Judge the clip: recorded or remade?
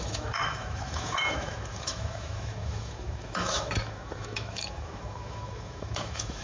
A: remade